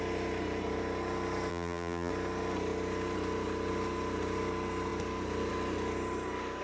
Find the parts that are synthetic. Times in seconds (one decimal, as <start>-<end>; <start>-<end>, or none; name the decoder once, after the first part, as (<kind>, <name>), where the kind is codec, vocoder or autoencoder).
1.5-2.1 (vocoder, BigVGAN v2)